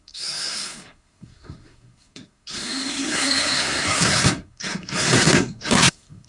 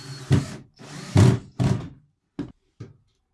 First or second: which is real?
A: second